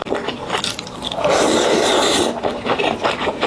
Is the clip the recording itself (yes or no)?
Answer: no